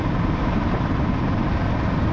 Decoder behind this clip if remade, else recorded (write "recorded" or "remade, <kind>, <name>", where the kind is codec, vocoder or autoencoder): remade, vocoder, BigVGAN v2